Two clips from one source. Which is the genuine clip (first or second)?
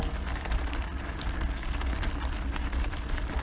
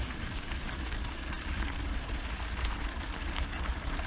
first